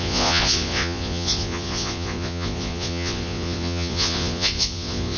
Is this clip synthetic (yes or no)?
yes